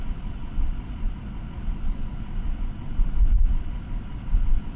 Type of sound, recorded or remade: recorded